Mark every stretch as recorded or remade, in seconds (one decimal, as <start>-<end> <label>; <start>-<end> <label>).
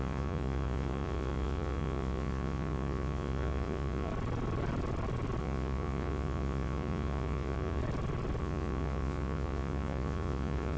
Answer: 0.0-4.1 remade; 4.1-5.4 recorded; 5.4-7.8 remade; 7.8-8.4 recorded; 8.4-10.8 remade